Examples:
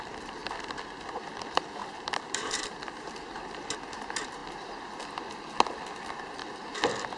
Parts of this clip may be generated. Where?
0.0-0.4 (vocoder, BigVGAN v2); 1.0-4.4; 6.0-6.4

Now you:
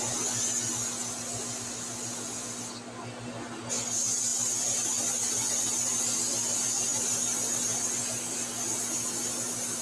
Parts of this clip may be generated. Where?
none

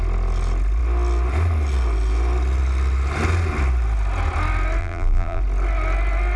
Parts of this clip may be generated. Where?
4.8-5.4 (vocoder, BigVGAN v2)

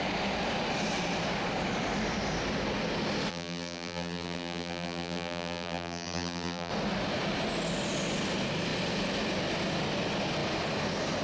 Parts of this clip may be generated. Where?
3.3-6.7 (vocoder, BigVGAN v2)

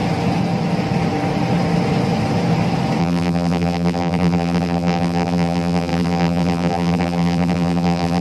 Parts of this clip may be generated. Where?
3.0-8.2 (vocoder, BigVGAN v2)

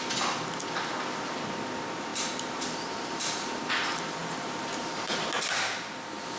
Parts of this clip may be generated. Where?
2.1-3.5 (vocoder, BigVGAN v2); 4.2-5.3

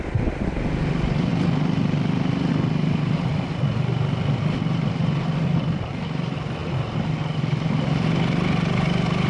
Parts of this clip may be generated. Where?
none